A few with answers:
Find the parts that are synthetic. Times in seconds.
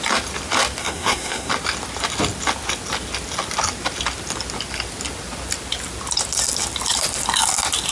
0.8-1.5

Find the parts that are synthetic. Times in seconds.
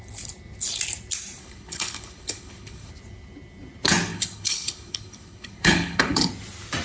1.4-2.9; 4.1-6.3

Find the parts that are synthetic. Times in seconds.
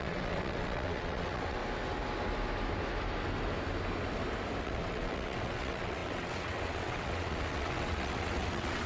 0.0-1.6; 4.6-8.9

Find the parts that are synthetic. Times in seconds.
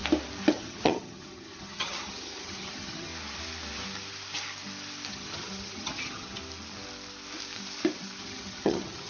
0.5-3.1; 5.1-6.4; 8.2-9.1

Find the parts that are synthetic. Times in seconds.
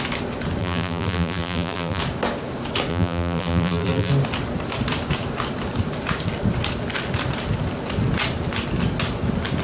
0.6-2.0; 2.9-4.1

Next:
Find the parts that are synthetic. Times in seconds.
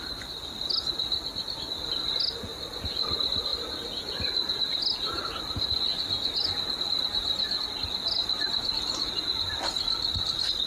8.2-9.1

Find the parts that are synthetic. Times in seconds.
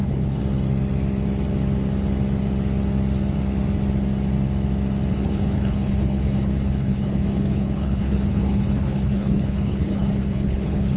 0.0-0.4; 5.1-11.0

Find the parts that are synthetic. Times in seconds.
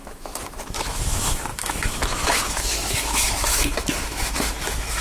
0.0-5.0